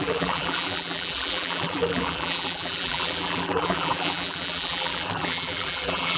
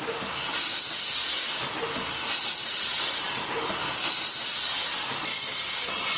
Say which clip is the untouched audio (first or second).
second